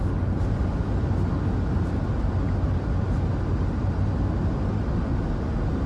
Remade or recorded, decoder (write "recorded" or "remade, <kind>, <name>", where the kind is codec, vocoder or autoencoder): recorded